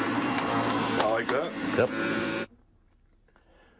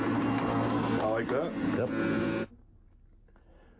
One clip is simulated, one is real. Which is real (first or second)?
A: second